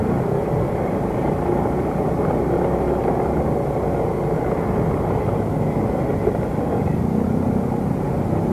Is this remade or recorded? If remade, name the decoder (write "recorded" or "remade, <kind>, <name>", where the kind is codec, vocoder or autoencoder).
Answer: recorded